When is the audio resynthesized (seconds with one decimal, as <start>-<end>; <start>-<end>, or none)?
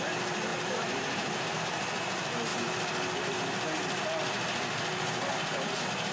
0.5-1.6